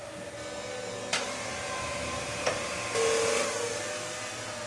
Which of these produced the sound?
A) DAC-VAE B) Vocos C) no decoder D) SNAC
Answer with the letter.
C